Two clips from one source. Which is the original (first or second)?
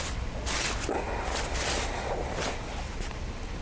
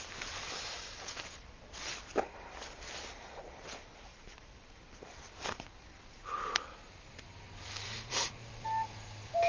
first